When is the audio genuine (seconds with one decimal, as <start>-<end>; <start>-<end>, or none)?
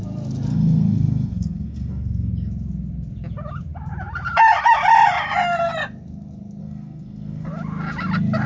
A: 0.0-0.5; 2.3-6.6; 7.5-8.5